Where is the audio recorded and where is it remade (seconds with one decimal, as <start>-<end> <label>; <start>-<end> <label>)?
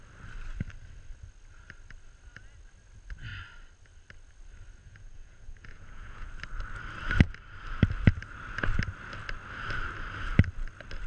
0.0-4.8 recorded; 4.8-6.3 remade; 6.3-11.1 recorded